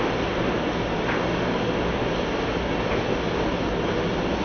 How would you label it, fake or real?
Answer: real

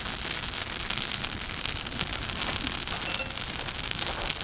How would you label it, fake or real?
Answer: real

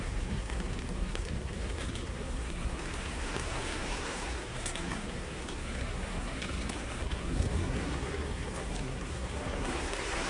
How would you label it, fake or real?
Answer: fake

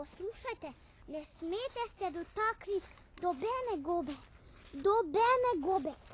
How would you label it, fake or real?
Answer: real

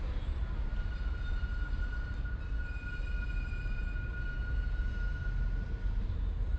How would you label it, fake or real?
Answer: real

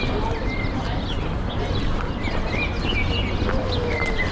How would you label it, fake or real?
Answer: real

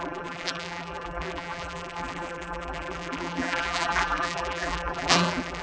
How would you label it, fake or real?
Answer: fake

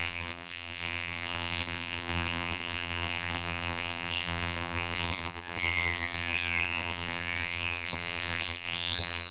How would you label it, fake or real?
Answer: fake